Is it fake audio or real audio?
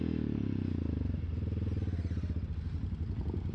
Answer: real